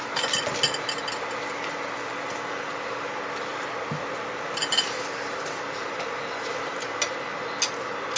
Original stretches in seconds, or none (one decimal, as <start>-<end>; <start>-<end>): 0.0-8.2